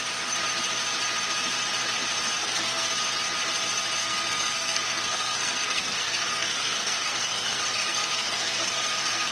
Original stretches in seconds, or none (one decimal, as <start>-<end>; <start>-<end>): 0.0-2.4; 2.9-4.0

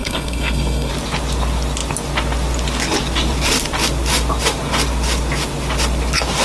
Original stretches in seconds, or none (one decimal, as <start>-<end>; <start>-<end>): 0.9-6.4

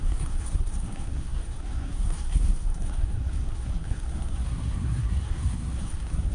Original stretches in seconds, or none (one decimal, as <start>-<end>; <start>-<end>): none

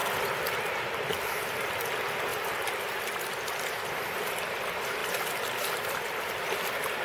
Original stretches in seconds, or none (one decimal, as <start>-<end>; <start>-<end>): 0.0-7.0